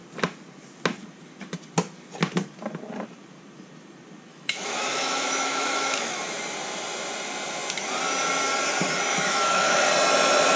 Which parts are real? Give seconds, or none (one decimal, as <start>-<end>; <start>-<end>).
0.0-4.3; 6.2-9.1; 9.9-10.6